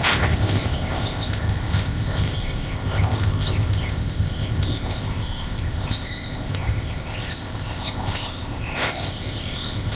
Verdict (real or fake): fake